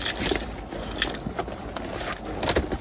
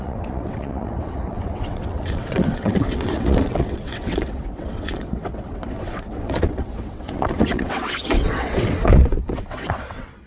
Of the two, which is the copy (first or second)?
second